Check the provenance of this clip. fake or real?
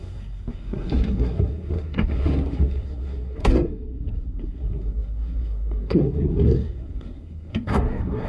fake